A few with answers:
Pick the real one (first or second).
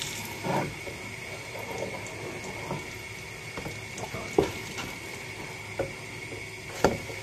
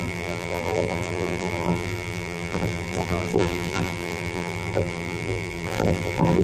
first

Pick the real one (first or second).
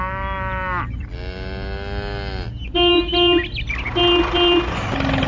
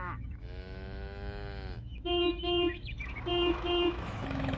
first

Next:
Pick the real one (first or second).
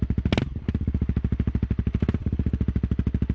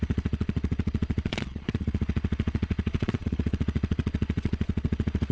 first